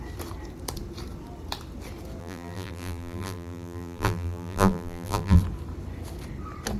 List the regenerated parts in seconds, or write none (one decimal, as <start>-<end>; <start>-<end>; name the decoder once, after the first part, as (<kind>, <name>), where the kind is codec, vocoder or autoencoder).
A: 2.2-5.4 (vocoder, BigVGAN v2)